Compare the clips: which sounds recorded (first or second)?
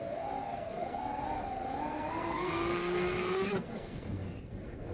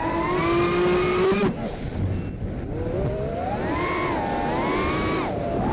second